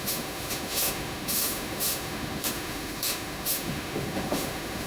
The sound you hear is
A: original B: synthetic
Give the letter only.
B